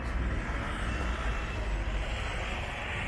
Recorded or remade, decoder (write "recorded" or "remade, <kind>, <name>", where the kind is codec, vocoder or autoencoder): recorded